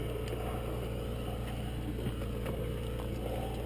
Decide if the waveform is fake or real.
real